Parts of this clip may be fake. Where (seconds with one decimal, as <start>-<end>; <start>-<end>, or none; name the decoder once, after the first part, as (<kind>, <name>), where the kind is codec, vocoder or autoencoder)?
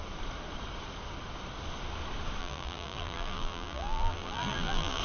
2.4-5.0 (vocoder, BigVGAN v2)